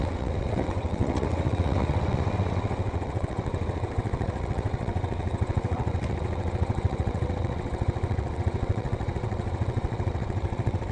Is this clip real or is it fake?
fake